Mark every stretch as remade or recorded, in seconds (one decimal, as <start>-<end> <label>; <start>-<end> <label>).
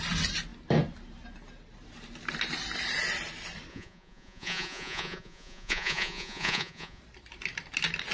0.0-3.7 recorded; 3.7-7.0 remade; 7.0-8.1 recorded